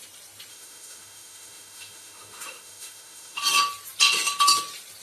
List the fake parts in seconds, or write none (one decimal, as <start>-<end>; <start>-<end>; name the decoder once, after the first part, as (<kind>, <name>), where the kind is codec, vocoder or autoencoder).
0.5-3.4 (autoencoder, DAC-VAE)